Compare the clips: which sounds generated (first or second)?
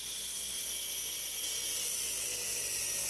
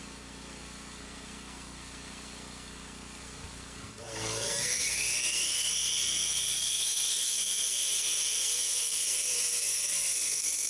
second